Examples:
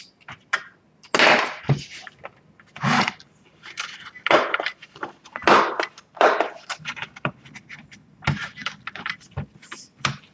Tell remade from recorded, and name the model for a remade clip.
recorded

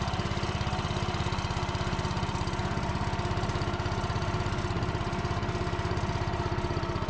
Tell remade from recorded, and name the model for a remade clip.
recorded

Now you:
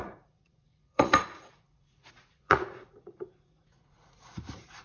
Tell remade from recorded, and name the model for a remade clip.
remade, vocoder, Vocos